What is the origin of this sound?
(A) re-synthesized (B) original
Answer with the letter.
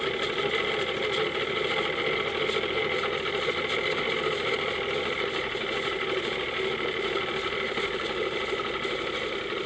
B